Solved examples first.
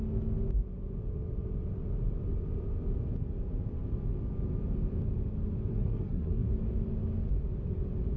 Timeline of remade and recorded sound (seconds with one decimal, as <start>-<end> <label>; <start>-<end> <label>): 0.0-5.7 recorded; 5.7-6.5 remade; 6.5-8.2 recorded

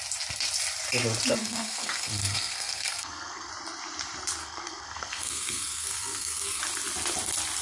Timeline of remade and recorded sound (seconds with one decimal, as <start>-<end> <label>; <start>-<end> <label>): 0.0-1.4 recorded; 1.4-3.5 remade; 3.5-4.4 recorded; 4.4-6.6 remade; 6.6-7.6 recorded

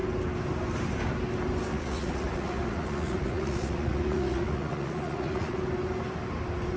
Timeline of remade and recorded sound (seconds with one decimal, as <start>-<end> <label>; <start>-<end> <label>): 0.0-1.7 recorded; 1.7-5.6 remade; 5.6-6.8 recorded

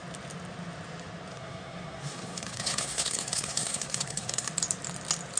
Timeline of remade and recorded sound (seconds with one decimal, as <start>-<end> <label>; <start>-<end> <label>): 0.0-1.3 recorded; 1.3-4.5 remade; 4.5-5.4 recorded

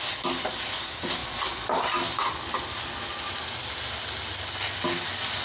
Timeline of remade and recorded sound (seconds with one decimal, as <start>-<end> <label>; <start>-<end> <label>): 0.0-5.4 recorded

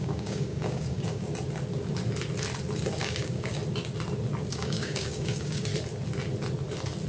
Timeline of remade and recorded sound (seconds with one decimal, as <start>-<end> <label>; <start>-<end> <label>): 0.0-1.3 remade; 1.3-3.0 recorded; 3.0-3.6 remade; 3.6-4.5 recorded; 4.5-5.7 remade; 5.7-7.1 recorded

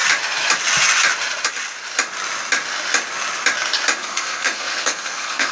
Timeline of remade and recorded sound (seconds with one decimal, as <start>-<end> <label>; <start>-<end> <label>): 0.0-4.0 recorded; 4.0-5.5 remade